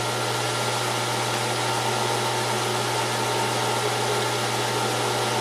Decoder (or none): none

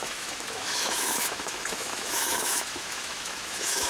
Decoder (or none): autoencoder, DAC-VAE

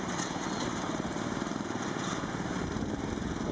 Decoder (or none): vocoder, BigVGAN v2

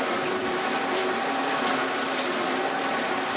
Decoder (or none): vocoder, BigVGAN v2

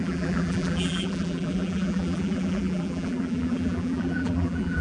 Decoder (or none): vocoder, BigVGAN v2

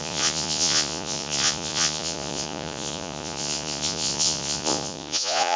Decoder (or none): vocoder, Vocos